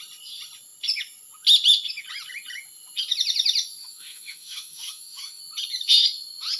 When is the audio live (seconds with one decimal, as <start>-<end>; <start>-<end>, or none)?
0.0-3.8; 5.4-6.6

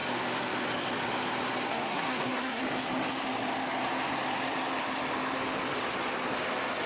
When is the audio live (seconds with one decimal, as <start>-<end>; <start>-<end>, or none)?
0.0-1.7; 2.6-6.9

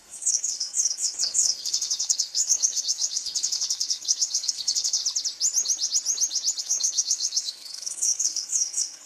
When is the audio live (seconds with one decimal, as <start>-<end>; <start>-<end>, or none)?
5.0-6.6

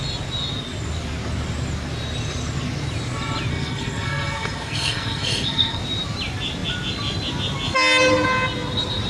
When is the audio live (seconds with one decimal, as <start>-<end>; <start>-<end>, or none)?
0.0-3.5; 5.8-9.1

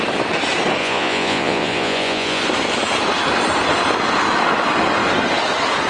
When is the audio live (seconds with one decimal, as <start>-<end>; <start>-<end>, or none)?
0.0-0.8; 2.4-5.9

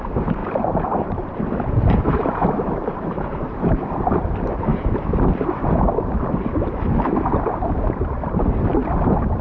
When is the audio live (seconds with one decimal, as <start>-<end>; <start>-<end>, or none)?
0.0-0.4; 3.8-9.4

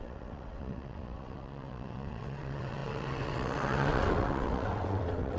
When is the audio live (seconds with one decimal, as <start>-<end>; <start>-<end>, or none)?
none

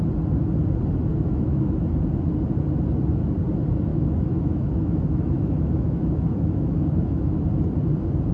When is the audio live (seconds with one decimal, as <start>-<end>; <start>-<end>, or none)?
0.0-1.1; 1.8-3.9; 7.4-8.3